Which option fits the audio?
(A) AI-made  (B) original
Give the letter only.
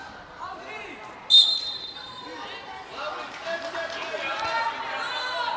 B